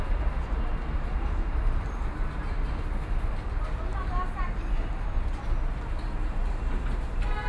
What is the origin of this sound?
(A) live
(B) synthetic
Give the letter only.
A